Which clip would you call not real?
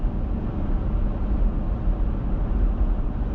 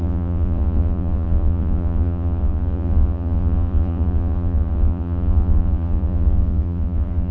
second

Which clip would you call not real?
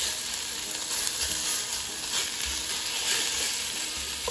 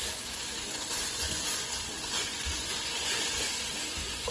second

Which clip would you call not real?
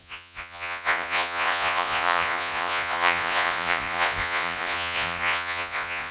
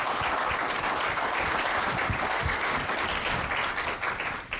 first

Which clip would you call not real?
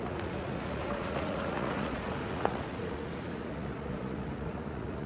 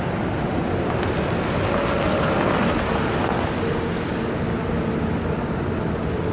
first